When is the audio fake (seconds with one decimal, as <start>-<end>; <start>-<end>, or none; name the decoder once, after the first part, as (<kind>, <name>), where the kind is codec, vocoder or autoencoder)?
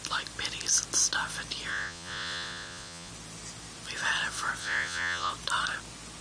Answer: 1.7-3.1 (vocoder, Vocos); 4.6-5.3